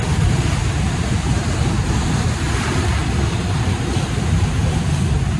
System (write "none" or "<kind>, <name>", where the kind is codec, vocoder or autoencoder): none